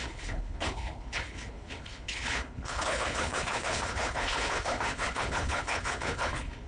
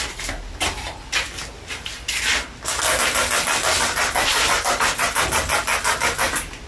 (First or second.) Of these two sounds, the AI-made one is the first